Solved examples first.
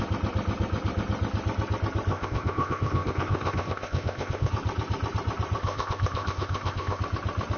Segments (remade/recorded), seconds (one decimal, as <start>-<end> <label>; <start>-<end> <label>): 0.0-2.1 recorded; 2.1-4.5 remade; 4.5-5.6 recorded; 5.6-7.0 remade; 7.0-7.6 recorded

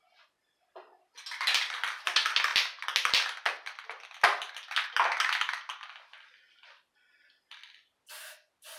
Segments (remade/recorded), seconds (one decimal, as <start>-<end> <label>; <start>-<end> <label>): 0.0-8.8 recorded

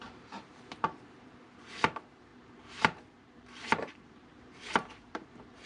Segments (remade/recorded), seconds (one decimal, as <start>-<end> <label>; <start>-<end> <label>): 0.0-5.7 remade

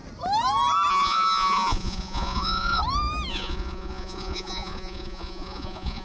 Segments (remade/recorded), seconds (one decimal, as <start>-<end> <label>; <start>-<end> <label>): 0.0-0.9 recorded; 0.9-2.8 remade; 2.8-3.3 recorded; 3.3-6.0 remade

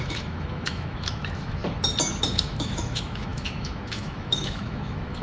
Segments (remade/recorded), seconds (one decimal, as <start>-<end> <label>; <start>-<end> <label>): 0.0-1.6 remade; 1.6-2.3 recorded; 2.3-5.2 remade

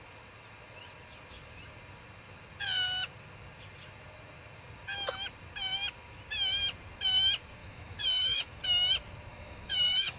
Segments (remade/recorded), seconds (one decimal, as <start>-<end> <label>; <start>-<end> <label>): 0.0-7.6 recorded; 7.6-8.6 remade; 8.6-9.3 recorded; 9.3-10.2 remade